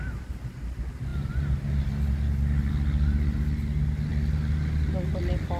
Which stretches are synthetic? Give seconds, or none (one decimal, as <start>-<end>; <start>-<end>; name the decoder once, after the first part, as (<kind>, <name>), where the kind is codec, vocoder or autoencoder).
none